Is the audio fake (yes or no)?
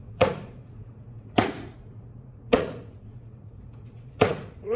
yes